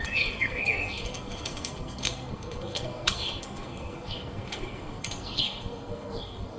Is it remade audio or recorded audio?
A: remade